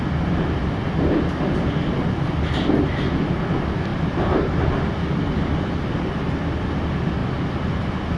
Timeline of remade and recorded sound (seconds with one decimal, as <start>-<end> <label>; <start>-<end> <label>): 0.0-3.9 recorded; 3.9-4.7 remade; 4.7-8.2 recorded